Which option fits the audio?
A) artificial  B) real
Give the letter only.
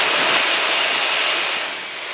B